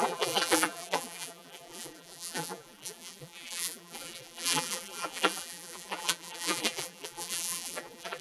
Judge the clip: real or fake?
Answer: fake